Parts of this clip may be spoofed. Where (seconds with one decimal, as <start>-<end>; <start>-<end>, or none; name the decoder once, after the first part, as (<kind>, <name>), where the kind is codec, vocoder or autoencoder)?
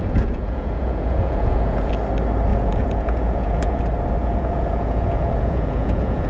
0.0-1.9 (vocoder, Vocos); 2.5-3.8; 4.2-6.3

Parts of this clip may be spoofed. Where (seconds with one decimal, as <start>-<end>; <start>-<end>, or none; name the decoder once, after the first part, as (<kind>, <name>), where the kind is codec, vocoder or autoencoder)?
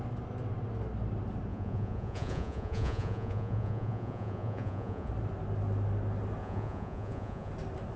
1.5-5.1 (vocoder, Vocos); 6.4-7.5